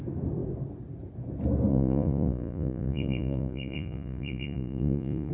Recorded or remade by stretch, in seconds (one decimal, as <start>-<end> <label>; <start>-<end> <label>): 0.0-1.7 recorded; 1.7-5.3 remade